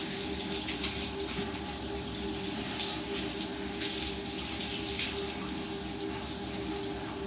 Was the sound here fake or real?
real